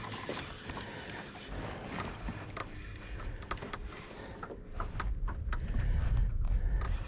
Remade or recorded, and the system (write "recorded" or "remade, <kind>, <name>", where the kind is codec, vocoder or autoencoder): recorded